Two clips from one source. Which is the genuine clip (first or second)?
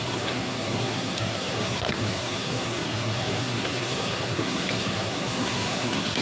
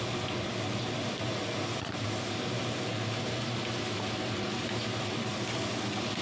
second